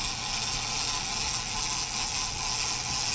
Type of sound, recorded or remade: recorded